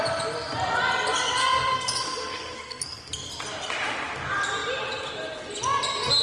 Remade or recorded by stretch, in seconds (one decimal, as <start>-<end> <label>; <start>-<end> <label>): 0.0-1.4 recorded; 1.4-3.1 remade; 3.1-6.2 recorded